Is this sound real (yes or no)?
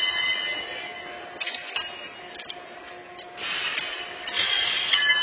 yes